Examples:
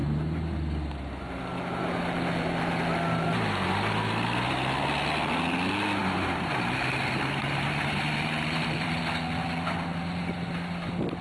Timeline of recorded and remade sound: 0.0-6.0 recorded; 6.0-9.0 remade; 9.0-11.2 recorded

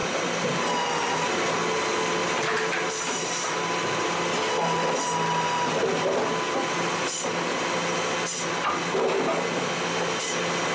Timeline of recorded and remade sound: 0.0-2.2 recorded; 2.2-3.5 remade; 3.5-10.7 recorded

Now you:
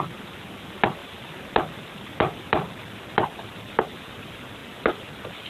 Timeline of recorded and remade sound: 0.0-5.5 recorded

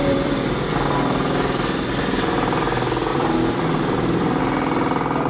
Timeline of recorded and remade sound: 0.0-0.7 remade; 0.7-3.1 recorded; 3.1-4.4 remade; 4.4-5.3 recorded

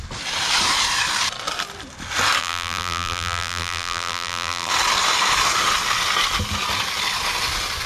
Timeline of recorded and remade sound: 0.0-2.4 recorded; 2.4-4.7 remade; 4.7-7.9 recorded

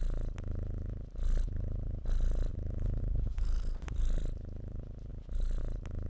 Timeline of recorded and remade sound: 0.0-5.1 remade; 5.1-5.6 recorded; 5.6-6.1 remade

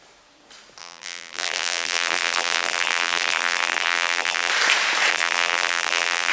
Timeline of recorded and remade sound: 0.0-0.8 recorded; 0.8-4.5 remade; 4.5-5.1 recorded; 5.1-6.3 remade

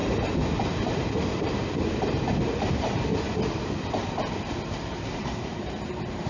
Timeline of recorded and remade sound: 0.0-3.1 remade; 3.1-5.1 recorded; 5.1-6.3 remade